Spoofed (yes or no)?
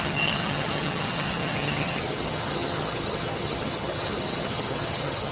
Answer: yes